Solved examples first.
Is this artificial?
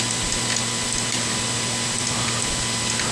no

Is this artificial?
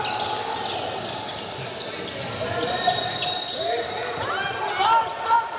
no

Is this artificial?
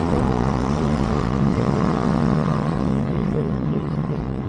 yes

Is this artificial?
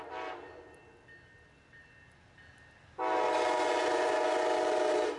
no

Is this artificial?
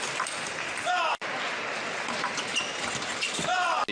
no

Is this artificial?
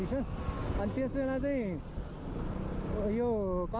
no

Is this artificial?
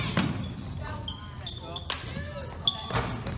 no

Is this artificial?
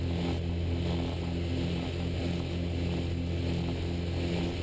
no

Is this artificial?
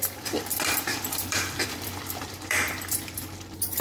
yes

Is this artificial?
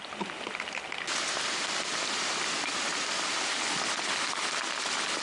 no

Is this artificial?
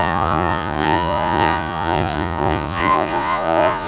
yes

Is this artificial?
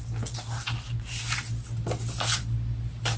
no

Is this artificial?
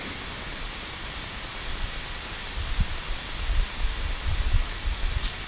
no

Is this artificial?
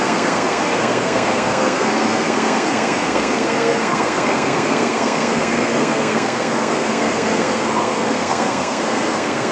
yes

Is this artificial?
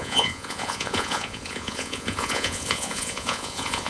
yes